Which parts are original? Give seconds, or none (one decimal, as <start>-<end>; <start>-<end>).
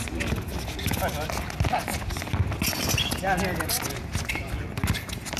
0.0-5.4